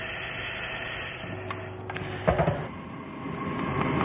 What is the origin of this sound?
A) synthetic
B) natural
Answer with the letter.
B